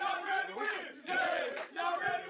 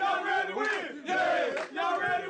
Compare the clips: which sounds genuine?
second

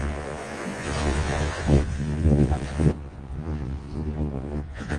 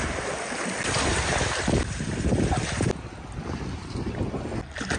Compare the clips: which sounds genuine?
second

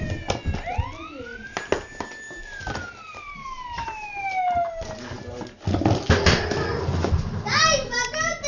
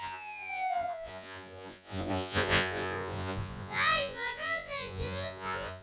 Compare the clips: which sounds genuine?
first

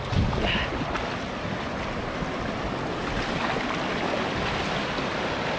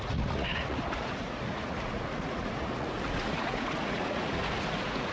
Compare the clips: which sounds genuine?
first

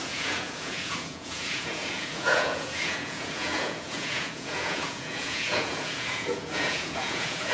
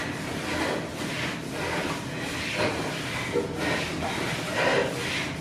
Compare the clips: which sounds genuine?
second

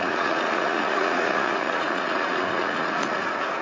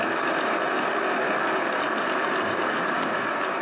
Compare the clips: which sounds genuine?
second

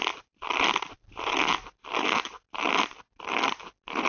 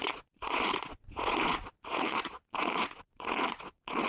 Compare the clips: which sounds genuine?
first